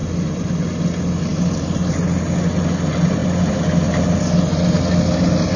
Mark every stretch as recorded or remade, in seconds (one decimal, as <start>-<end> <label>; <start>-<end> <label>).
0.0-5.6 recorded